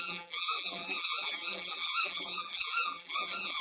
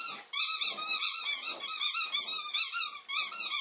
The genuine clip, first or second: second